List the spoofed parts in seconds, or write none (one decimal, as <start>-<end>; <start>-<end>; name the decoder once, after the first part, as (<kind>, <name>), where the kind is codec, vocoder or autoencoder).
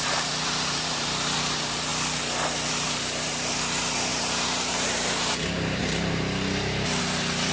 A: 0.0-1.9 (vocoder, BigVGAN v2); 2.7-7.5